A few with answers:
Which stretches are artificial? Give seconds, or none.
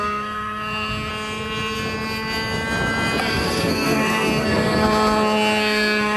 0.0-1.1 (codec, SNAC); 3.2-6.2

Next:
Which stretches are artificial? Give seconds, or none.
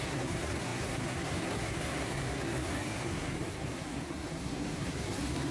0.0-5.5 (codec, SNAC)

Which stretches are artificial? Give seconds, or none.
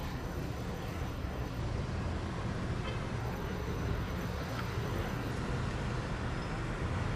0.0-1.6 (codec, SNAC); 3.2-5.3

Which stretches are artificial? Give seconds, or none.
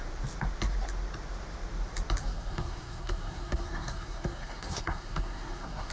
2.2-5.9 (codec, SNAC)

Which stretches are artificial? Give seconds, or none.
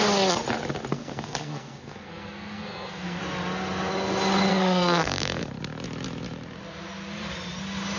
0.9-3.2 (codec, SNAC); 4.5-5.5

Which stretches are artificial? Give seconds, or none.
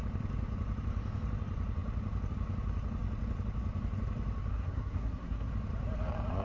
4.5-5.5 (codec, SNAC)